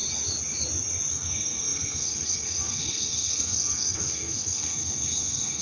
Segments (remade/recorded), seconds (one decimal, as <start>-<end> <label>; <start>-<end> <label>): 0.0-1.1 recorded; 1.1-5.6 remade